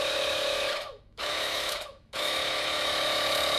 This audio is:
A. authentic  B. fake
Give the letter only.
B